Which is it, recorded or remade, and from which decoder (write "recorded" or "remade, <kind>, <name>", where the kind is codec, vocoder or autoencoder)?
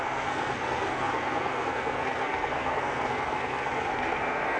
remade, codec, SNAC